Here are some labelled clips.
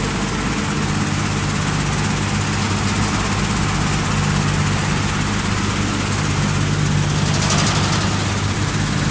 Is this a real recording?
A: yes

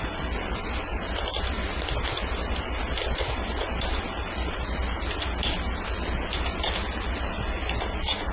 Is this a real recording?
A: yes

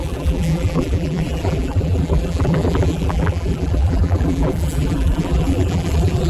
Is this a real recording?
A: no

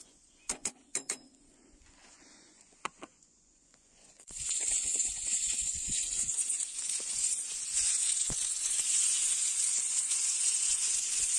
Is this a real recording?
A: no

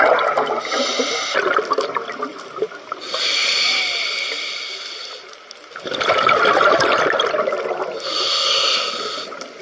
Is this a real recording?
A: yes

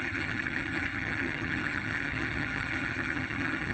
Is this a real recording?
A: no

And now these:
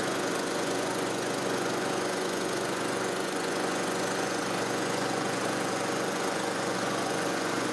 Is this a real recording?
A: no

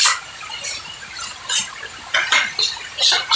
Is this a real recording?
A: yes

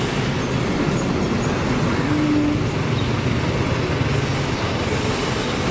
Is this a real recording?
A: yes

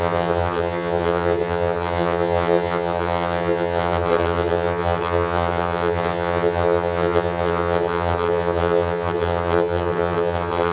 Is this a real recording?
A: no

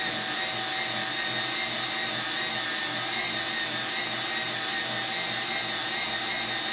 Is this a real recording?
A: yes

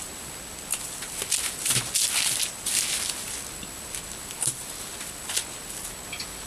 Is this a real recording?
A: yes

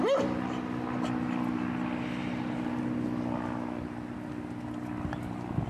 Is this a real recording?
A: yes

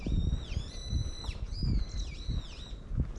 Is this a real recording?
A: yes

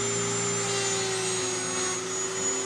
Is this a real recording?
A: yes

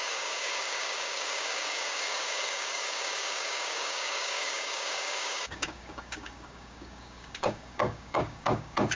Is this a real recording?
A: no